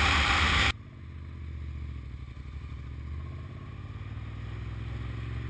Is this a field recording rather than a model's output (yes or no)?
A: yes